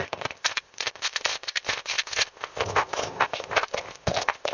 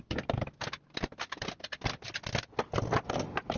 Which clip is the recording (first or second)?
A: second